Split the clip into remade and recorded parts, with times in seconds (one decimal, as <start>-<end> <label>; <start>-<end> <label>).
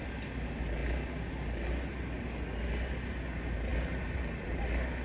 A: 0.0-3.7 recorded; 3.7-4.6 remade; 4.6-5.0 recorded